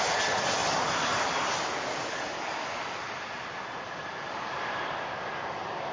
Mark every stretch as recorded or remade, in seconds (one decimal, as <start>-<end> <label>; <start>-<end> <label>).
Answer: 0.0-5.9 recorded